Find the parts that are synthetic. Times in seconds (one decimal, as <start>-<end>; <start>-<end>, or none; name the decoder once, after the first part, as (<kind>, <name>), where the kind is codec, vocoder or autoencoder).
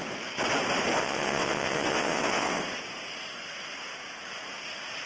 1.0-2.6 (vocoder, WaveNeXt)